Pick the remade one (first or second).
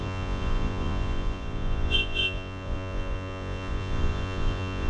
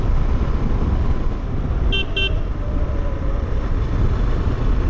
first